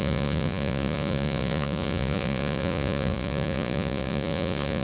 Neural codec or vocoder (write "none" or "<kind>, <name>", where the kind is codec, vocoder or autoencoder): vocoder, Vocos